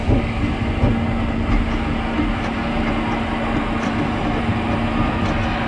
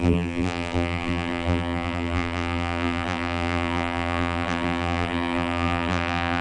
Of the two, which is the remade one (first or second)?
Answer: second